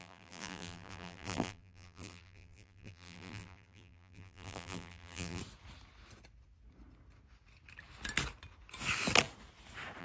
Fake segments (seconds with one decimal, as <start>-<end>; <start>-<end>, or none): 0.0-5.4